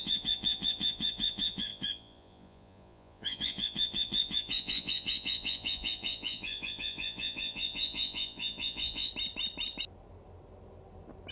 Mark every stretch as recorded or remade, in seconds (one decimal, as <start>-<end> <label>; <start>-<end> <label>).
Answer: 0.0-9.1 remade; 9.1-11.3 recorded